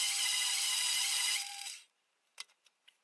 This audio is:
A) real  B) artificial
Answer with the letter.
B